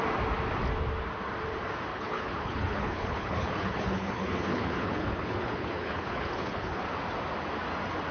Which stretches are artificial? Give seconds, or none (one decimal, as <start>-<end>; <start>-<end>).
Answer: 1.9-6.8